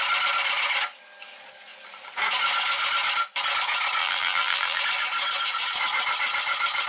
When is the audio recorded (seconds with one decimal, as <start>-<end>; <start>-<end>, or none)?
0.0-4.0; 4.8-6.9